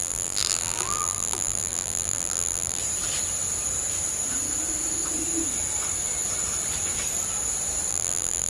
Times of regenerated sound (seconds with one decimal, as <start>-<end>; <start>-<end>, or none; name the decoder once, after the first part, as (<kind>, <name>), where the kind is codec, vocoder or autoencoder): 0.0-2.8 (vocoder, BigVGAN v2); 7.9-8.5